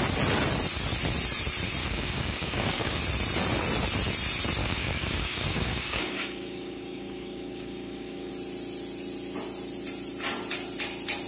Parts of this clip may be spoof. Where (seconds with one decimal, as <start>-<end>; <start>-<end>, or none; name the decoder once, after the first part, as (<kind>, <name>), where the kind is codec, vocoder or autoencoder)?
1.8-3.0 (codec, DAC); 4.6-8.3